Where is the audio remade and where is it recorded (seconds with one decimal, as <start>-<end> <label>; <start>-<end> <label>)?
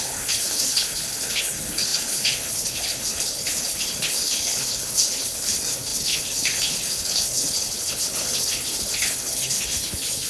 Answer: 0.0-10.3 remade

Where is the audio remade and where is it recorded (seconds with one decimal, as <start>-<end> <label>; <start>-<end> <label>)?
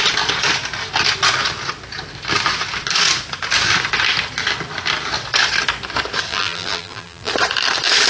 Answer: 0.0-6.3 recorded; 6.3-7.3 remade; 7.3-8.1 recorded